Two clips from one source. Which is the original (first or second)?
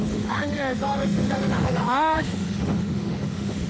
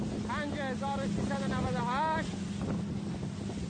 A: second